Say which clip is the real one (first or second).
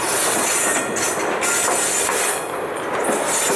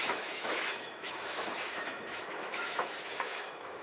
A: first